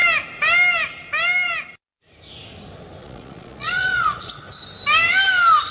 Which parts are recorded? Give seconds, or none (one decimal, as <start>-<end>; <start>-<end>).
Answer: 0.0-3.0; 4.4-5.7